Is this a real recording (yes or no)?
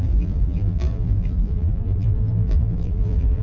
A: no